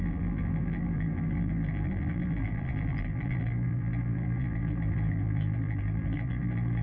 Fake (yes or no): yes